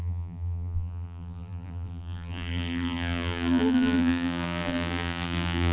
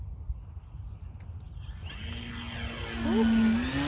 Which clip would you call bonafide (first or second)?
second